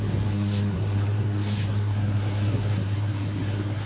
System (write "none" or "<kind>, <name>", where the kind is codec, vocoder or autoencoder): codec, SNAC